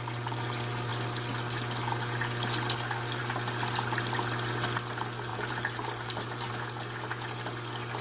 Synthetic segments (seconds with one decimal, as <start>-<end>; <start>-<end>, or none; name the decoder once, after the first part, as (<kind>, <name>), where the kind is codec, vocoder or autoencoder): 5.3-6.5 (vocoder, BigVGAN v2)